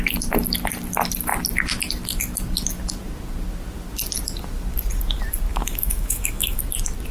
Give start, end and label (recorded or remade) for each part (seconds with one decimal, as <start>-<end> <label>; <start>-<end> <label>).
0.0-5.5 recorded; 5.5-6.6 remade; 6.6-7.1 recorded